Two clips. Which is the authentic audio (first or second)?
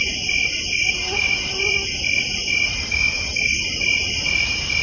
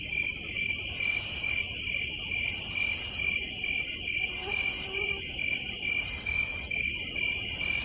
first